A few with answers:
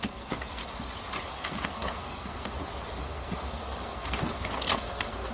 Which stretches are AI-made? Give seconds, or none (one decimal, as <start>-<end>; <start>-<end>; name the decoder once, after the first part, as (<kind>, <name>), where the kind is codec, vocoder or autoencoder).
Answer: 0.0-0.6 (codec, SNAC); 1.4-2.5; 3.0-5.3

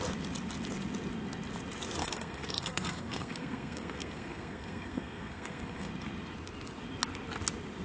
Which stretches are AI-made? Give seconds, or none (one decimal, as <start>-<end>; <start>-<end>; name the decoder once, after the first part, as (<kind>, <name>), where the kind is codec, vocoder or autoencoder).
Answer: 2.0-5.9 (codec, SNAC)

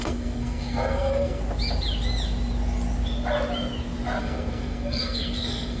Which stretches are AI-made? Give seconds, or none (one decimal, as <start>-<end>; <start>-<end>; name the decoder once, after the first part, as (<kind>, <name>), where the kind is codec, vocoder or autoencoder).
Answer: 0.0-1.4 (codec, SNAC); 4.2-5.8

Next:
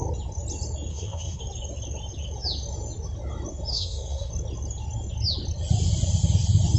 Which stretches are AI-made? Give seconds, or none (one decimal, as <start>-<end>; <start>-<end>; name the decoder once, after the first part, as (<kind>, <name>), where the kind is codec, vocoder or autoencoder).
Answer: 0.9-1.4 (codec, SNAC); 3.7-4.3

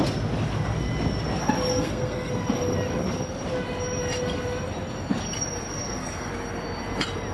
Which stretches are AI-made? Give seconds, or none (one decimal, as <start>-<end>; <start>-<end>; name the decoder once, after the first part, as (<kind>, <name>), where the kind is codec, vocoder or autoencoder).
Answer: 1.7-2.3 (codec, SNAC); 5.7-6.3

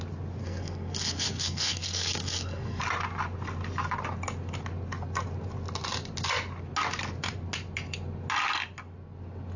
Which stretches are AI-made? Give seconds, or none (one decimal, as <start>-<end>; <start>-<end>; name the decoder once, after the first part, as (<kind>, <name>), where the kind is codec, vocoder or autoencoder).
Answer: 0.4-2.8 (codec, SNAC)

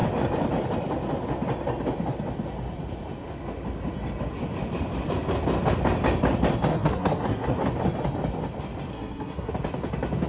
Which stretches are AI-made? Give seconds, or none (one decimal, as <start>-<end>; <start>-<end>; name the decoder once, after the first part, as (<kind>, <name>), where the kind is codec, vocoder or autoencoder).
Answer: 6.7-7.6 (codec, SNAC); 8.9-9.5